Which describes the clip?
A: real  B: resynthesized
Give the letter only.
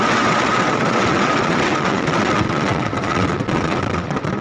B